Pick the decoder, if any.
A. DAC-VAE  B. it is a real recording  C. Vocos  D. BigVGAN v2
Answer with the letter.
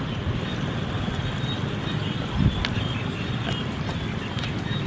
D